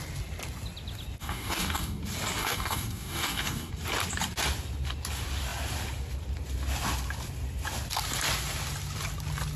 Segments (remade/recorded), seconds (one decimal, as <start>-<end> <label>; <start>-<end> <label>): 0.0-1.2 recorded; 1.2-2.0 remade; 2.0-2.4 recorded; 2.4-3.7 remade; 3.7-9.6 recorded